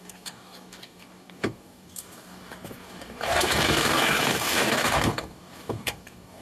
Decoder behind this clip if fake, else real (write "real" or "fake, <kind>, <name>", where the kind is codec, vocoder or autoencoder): fake, codec, DAC